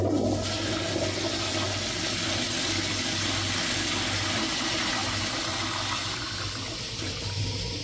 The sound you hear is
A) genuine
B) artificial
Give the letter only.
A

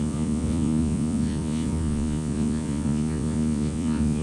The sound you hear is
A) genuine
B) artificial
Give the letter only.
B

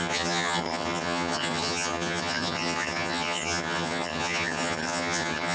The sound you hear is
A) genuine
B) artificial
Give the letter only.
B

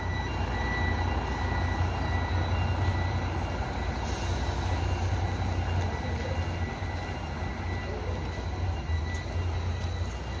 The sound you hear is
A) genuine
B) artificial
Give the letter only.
A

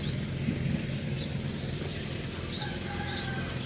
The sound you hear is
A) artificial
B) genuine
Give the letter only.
B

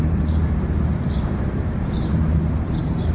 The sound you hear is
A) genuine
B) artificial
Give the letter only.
B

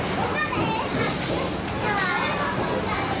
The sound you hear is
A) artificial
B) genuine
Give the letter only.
B